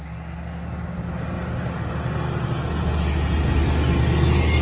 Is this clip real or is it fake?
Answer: real